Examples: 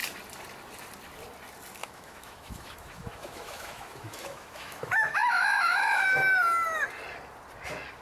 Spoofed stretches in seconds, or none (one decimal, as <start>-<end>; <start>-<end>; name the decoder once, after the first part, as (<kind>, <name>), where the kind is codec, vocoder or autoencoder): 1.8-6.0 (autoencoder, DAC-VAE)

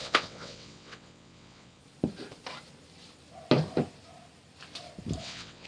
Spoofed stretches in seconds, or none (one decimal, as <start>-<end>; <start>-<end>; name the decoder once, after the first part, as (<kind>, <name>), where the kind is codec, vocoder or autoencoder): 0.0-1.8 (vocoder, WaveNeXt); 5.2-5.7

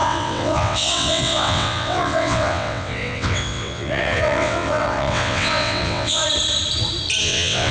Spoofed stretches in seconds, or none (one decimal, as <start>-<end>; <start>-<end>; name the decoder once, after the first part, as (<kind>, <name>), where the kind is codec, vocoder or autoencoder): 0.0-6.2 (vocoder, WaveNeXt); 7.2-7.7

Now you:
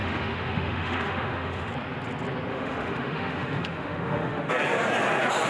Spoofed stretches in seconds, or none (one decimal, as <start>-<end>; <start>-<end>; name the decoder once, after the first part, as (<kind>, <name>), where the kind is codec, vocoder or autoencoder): 0.0-1.7 (autoencoder, DAC-VAE); 2.5-4.5

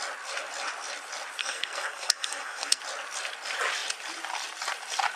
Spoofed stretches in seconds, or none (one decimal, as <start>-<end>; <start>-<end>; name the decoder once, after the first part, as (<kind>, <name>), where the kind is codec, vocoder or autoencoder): 1.4-2.8 (codec, SNAC)

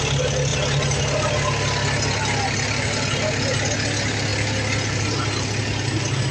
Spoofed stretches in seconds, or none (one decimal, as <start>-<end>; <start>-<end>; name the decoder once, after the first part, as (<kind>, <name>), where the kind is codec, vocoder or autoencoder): none